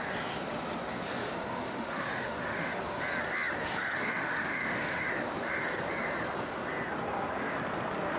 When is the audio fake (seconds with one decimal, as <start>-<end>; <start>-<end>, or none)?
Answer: 1.2-2.8; 3.6-5.1